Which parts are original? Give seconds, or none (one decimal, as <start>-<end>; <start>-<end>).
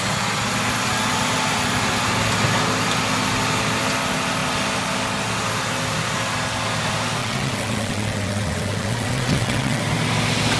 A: 0.0-7.2; 9.8-10.6